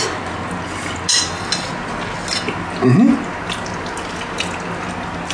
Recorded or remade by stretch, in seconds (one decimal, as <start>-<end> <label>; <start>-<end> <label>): 0.0-5.3 recorded